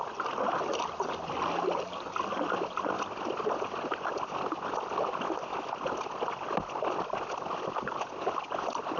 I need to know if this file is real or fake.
real